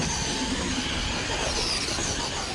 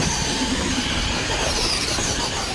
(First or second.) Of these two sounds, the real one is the first